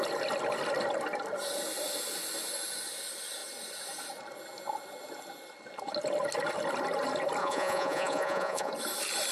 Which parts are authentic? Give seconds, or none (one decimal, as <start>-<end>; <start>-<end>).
0.0-7.4; 8.7-9.3